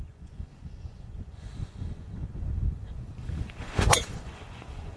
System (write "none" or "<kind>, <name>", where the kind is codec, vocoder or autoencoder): vocoder, Vocos